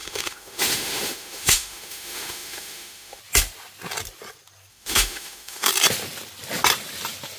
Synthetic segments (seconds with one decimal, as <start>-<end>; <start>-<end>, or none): 0.0-3.2; 4.7-5.7